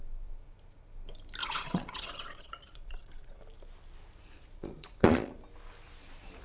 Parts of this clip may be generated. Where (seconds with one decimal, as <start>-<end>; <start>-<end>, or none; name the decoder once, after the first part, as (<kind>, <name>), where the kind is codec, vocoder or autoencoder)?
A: 1.4-3.4 (vocoder, Vocos); 4.6-5.3